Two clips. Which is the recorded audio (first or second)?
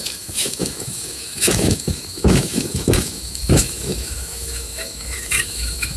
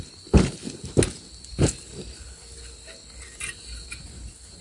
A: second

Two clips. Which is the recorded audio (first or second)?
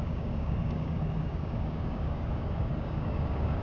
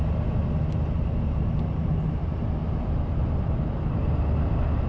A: second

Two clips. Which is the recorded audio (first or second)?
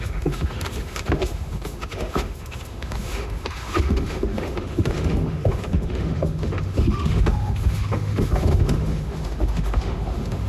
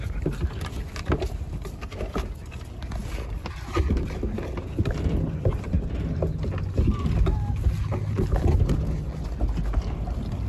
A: second